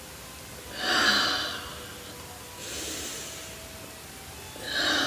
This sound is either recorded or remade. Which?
recorded